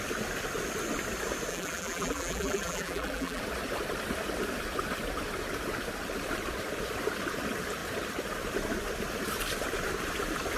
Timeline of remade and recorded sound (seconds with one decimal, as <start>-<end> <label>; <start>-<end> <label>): 0.0-1.5 recorded; 1.5-3.4 remade; 3.4-10.6 recorded